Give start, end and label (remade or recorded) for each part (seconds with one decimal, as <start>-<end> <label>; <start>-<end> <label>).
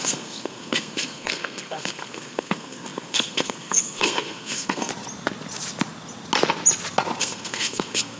0.0-4.9 remade; 4.9-7.2 recorded; 7.2-8.2 remade